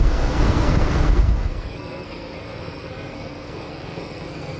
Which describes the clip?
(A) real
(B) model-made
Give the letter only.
B